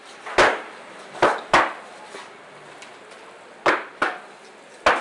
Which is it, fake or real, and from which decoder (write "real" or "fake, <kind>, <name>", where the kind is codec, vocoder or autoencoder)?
real